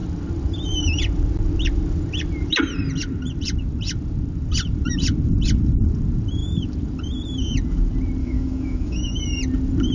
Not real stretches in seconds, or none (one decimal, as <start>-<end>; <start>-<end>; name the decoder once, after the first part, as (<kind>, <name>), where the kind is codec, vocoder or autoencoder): 8.2-9.2 (autoencoder, DAC-VAE)